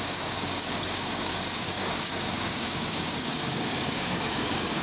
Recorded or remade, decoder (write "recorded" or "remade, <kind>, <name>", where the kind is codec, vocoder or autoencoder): remade, codec, DAC